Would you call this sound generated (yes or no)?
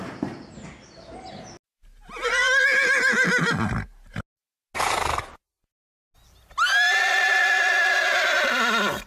no